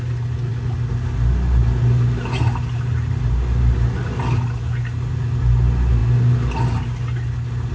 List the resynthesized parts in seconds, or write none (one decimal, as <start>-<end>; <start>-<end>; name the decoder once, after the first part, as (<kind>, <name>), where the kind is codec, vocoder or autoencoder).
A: none